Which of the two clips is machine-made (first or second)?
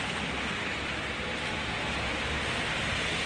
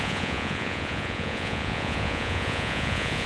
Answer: second